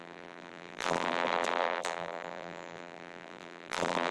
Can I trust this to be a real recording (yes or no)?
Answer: no